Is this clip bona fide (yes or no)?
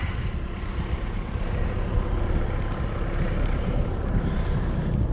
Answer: no